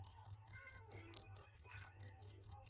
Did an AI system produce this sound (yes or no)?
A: yes